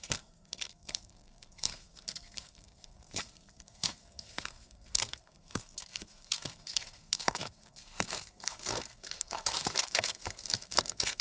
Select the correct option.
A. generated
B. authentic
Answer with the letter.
A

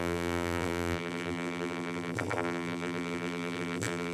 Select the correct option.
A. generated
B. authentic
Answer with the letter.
A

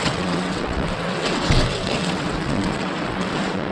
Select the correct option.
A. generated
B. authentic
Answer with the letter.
A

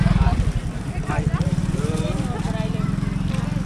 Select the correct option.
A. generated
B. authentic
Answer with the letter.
A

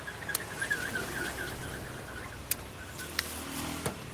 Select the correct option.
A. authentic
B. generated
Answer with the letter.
A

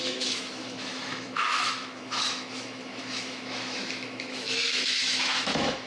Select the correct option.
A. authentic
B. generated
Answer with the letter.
B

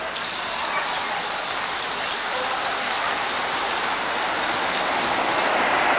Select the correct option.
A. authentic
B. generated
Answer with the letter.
A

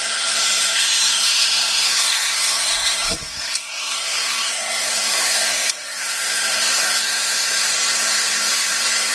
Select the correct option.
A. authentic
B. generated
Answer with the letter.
B